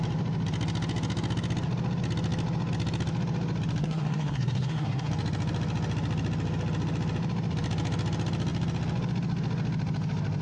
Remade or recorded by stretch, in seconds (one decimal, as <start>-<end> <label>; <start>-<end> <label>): 0.0-3.8 recorded; 3.8-5.1 remade; 5.1-10.4 recorded

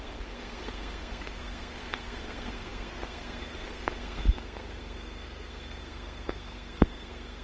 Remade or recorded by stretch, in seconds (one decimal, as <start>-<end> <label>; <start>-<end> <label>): 0.0-7.4 remade